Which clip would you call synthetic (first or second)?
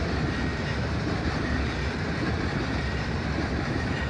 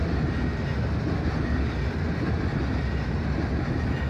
first